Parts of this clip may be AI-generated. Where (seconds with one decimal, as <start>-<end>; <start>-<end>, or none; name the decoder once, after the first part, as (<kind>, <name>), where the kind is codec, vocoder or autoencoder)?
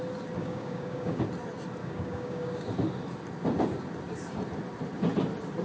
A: 0.4-1.2 (codec, DAC); 1.8-2.7